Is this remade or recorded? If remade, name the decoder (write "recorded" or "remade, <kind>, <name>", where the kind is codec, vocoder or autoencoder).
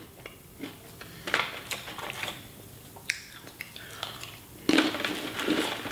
recorded